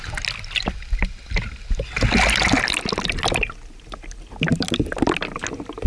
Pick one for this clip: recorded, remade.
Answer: recorded